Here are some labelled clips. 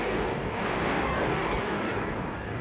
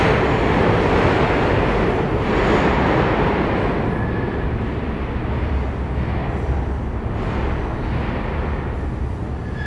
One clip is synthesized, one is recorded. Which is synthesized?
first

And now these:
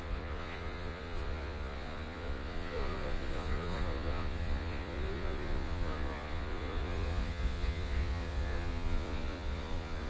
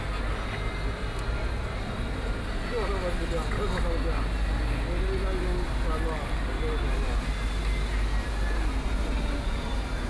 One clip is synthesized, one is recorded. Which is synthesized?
first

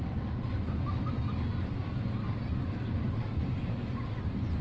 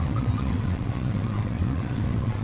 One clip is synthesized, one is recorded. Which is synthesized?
second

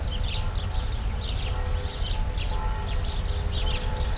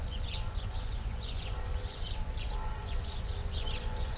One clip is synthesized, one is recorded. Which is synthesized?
second